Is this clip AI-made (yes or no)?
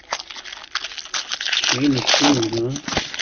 no